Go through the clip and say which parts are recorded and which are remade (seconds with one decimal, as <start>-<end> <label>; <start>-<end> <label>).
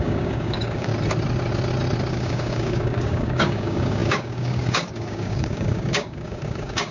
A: 0.0-0.9 remade; 0.9-2.1 recorded; 2.1-6.9 remade